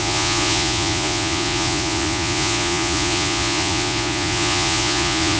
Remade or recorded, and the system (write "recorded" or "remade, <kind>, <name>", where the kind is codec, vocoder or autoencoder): remade, vocoder, Vocos